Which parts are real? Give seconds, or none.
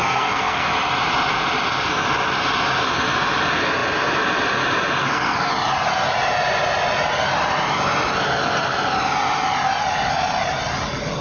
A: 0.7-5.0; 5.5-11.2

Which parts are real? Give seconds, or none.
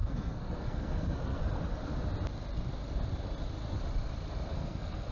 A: 1.4-4.5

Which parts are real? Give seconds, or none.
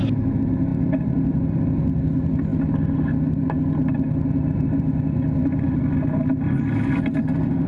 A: 0.0-7.7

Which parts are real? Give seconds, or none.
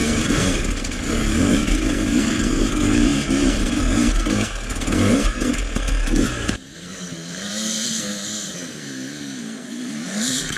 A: none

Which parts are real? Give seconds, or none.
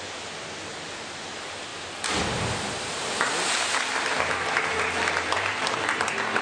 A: 0.0-6.4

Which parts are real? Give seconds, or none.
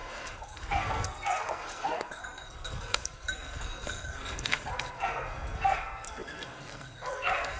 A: none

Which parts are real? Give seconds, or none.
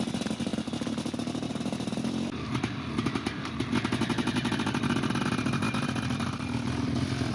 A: 0.0-7.3